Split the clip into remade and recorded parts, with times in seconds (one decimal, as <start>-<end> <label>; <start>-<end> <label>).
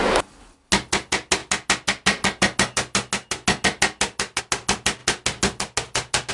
0.0-6.3 recorded